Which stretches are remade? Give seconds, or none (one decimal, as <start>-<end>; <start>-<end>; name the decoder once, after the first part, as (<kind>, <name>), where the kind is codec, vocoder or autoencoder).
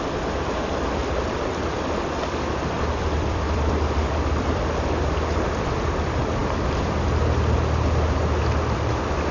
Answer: 1.0-4.6 (vocoder, BigVGAN v2); 6.4-7.0